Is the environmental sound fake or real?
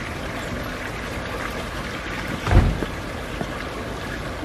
real